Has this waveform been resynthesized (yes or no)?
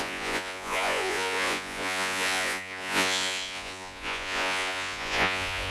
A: yes